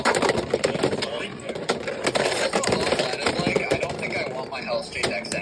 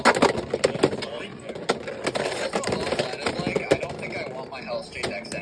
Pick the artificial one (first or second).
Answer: first